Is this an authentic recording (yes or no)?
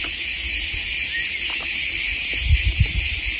yes